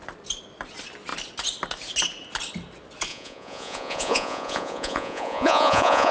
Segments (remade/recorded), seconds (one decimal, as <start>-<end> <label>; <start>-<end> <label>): 0.0-3.1 recorded; 3.1-6.1 remade